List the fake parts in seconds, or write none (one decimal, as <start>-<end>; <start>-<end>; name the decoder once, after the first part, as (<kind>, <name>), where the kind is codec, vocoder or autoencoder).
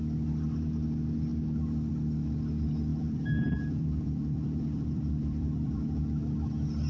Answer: 2.9-6.2 (vocoder, BigVGAN v2)